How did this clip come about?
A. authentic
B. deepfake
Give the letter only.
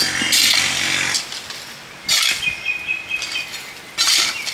A